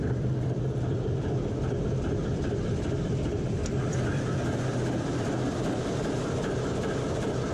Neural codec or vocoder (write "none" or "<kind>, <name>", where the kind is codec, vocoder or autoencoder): vocoder, BigVGAN v2